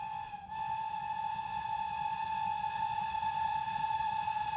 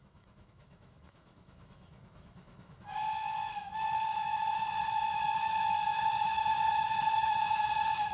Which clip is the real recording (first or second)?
first